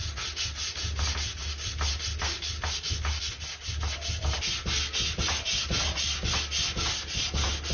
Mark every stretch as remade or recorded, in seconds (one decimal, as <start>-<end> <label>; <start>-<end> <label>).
0.0-7.7 recorded